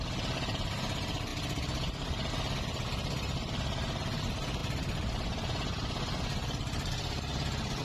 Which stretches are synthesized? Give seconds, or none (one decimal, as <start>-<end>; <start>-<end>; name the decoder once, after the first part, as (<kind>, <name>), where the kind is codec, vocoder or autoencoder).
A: none